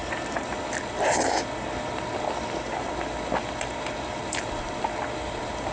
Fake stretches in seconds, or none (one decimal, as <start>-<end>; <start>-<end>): none